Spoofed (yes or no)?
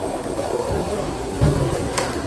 yes